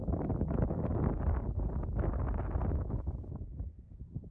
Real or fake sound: real